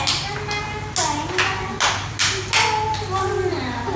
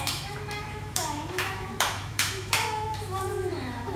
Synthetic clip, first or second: second